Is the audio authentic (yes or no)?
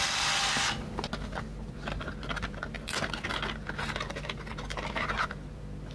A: yes